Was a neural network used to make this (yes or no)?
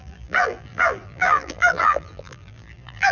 yes